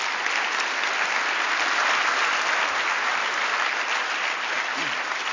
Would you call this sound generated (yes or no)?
no